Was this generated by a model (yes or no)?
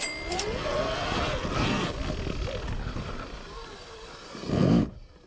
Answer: no